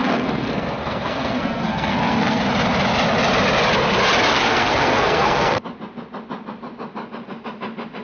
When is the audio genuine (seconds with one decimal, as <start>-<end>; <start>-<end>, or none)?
2.4-4.3; 5.7-8.0